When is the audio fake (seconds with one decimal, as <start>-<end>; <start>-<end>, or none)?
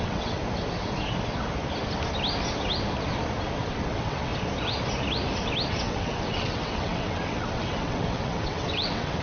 0.0-0.4; 3.6-4.3; 5.7-9.2